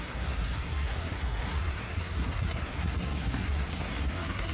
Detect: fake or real fake